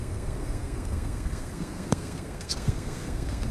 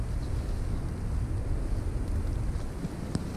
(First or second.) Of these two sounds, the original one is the second